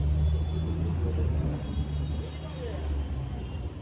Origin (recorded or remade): recorded